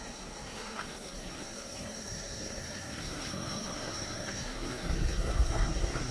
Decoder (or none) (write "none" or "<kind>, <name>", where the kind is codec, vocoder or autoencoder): codec, SNAC